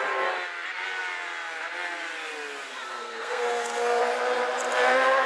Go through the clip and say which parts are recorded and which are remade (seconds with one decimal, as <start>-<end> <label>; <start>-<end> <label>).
0.0-2.9 recorded; 2.9-4.0 remade; 4.0-5.3 recorded